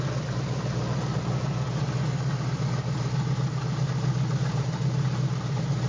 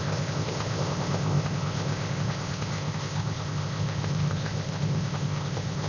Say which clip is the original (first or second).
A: first